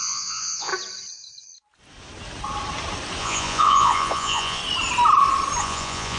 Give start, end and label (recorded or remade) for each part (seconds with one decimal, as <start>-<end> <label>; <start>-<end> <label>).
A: 0.0-0.7 remade; 0.7-3.2 recorded; 3.2-4.6 remade; 4.6-5.6 recorded; 5.6-6.2 remade